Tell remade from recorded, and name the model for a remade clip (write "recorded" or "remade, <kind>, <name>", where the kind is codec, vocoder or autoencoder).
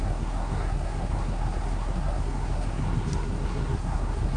remade, codec, SNAC